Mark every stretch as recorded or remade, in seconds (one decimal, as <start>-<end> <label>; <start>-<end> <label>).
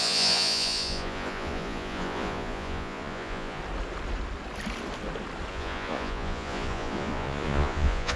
0.0-3.6 remade; 3.6-5.5 recorded; 5.5-8.2 remade